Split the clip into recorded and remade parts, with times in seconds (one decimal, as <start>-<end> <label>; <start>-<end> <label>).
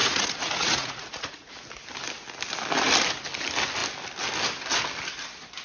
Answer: 0.0-1.5 remade; 1.5-5.6 recorded